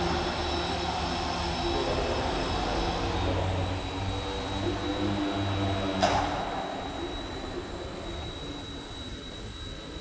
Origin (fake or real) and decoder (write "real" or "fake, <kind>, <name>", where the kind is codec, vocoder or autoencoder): real